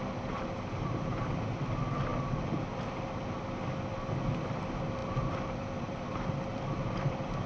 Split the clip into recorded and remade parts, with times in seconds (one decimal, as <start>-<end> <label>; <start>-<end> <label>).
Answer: 0.0-2.1 remade; 2.1-4.3 recorded; 4.3-7.5 remade